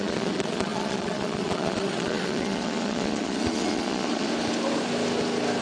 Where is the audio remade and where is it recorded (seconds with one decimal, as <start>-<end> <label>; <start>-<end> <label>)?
0.0-4.3 remade; 4.3-5.6 recorded

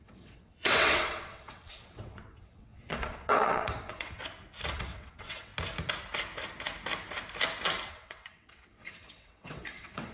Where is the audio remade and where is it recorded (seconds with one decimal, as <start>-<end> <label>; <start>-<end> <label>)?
0.0-4.2 remade; 4.2-4.7 recorded; 4.7-5.5 remade; 5.5-7.9 recorded; 7.9-10.1 remade

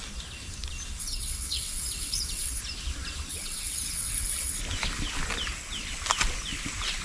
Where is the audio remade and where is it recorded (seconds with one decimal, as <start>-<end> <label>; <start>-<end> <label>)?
0.0-1.0 recorded; 1.0-2.6 remade; 2.6-3.3 recorded; 3.3-4.6 remade; 4.6-7.0 recorded

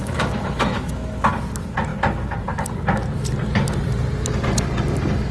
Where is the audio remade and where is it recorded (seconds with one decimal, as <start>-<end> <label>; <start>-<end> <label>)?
0.0-1.3 remade; 1.3-5.3 recorded